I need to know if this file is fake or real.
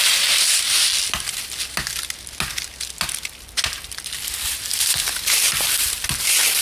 real